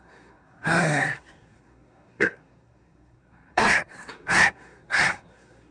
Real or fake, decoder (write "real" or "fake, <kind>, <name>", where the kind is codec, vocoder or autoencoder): fake, codec, SNAC